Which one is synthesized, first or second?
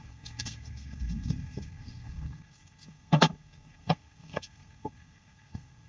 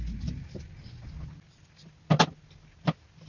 first